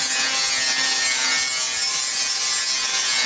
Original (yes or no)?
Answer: yes